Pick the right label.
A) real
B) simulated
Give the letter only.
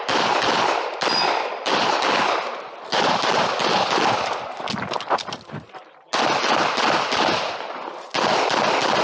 A